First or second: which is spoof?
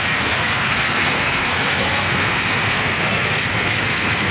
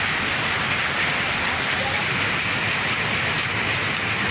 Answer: first